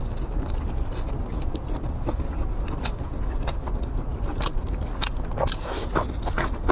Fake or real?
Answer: real